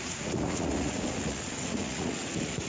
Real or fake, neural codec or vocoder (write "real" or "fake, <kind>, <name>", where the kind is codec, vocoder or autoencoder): fake, vocoder, Vocos